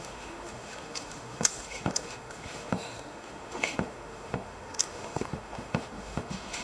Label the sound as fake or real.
fake